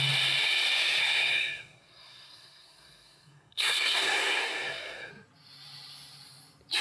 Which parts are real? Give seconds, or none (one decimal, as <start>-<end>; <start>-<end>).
0.0-1.0; 5.1-6.8